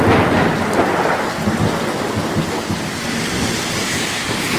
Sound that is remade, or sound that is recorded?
recorded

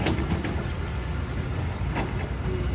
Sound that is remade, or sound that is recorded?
recorded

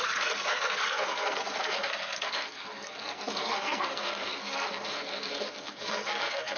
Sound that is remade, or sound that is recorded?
remade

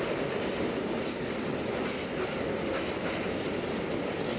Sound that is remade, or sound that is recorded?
recorded